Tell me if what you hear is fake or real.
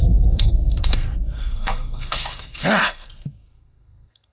fake